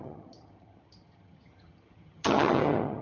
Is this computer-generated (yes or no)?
yes